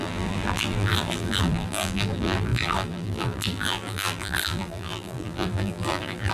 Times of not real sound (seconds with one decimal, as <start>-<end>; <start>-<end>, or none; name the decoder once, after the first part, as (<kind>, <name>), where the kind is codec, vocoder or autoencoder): 0.0-6.3 (vocoder, BigVGAN v2)